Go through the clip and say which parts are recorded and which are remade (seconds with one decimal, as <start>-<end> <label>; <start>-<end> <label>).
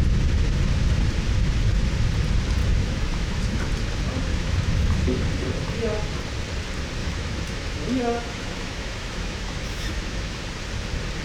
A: 0.0-2.6 recorded; 2.6-3.7 remade; 3.7-4.3 recorded; 4.3-5.2 remade; 5.2-7.0 recorded; 7.0-10.4 remade; 10.4-11.2 recorded